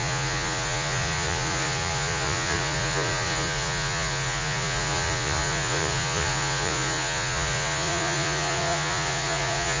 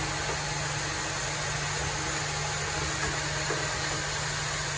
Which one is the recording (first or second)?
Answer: second